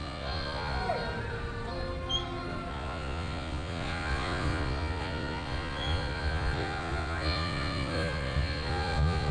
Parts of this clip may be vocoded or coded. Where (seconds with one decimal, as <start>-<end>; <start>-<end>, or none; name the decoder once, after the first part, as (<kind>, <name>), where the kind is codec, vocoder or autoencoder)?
0.0-0.8 (vocoder, Vocos); 2.7-9.3